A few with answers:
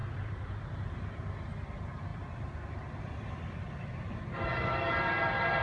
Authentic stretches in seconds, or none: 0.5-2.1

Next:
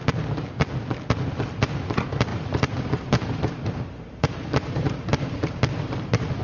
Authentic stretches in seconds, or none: 0.0-2.3